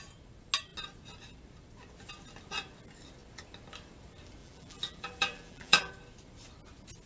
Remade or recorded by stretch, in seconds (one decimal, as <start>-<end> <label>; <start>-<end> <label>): 0.0-4.4 recorded; 4.4-5.9 remade; 5.9-7.1 recorded